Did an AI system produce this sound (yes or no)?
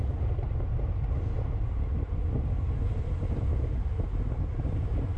no